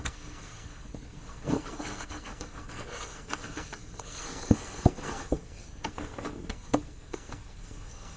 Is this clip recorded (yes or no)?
no